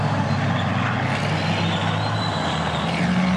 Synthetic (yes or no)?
no